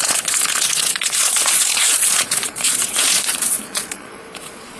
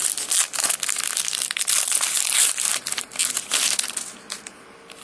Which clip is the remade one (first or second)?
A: first